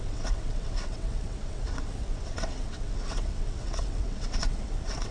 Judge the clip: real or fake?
fake